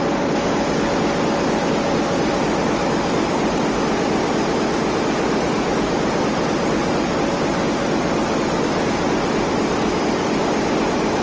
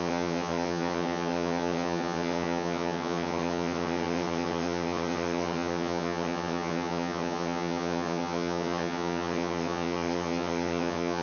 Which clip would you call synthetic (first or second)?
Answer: second